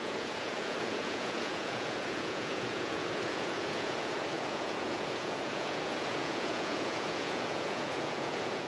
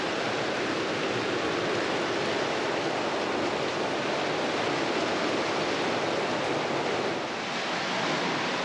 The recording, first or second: second